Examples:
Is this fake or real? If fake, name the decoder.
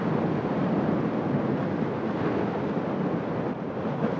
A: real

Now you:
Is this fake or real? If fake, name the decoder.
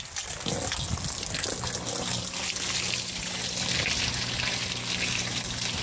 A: real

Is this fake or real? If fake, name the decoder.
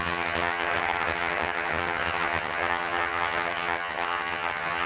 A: fake, vocoder, HiFi-GAN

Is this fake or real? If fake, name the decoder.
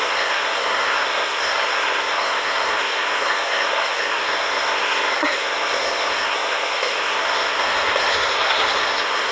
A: fake, codec, SNAC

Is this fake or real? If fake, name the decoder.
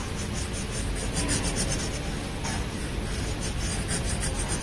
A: real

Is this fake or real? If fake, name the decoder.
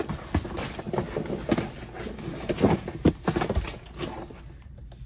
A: real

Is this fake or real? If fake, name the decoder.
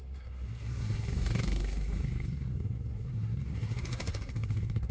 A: fake, codec, SNAC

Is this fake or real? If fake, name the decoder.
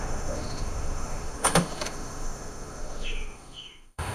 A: fake, autoencoder, DAC-VAE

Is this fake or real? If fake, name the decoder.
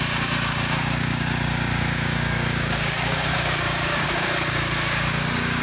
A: fake, codec, DAC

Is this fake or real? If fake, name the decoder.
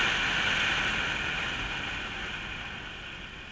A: real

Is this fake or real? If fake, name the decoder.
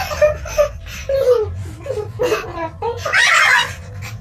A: real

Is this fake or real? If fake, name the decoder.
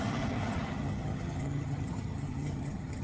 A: fake, vocoder, HiFi-GAN